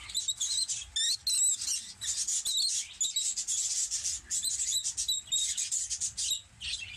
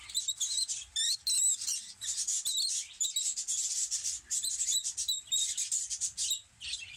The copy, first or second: second